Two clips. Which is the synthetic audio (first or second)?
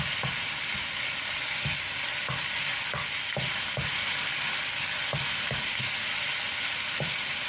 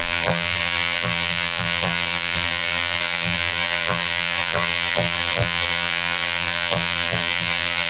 second